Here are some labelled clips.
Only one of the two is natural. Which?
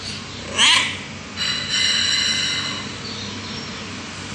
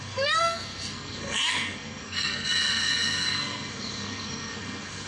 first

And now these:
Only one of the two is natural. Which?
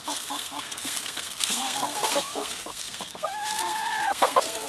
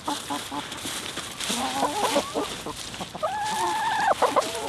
second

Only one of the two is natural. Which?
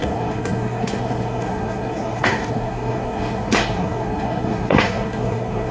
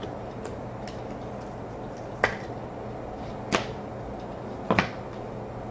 second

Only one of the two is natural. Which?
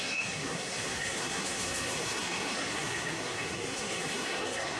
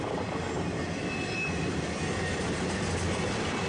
second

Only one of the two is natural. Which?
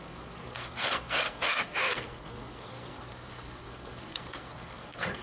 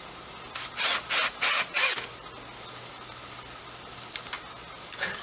second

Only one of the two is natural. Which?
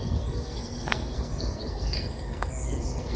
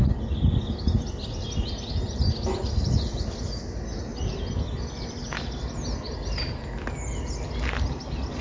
second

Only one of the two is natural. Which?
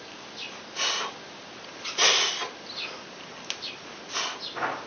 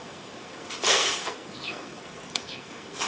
first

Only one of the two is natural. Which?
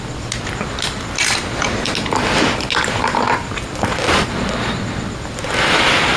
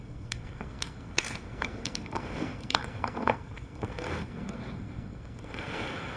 first